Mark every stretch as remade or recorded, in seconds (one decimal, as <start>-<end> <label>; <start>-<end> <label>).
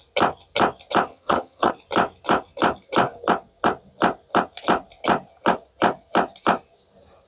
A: 0.0-1.1 recorded; 1.1-1.7 remade; 1.7-7.3 recorded